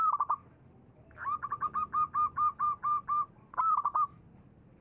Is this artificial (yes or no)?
no